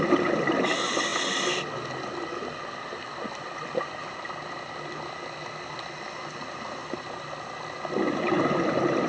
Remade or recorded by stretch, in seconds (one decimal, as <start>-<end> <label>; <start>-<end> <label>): 0.0-9.1 recorded